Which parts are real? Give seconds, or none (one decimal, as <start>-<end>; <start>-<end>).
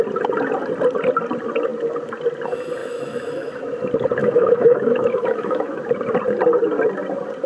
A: 0.0-2.8; 3.5-4.2; 5.8-7.5